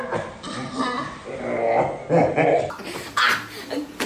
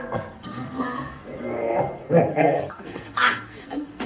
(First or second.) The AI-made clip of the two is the second